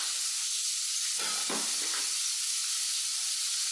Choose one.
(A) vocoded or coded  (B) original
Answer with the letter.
B